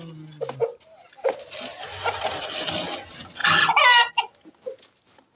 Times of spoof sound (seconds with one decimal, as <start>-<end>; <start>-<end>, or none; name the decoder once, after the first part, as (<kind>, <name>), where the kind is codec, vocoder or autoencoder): none